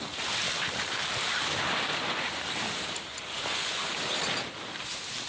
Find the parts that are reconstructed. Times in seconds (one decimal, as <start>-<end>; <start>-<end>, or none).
1.9-2.4; 3.1-3.9